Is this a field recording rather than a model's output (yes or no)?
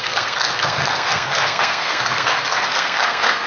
no